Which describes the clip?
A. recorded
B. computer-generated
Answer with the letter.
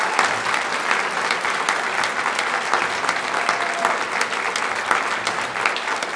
A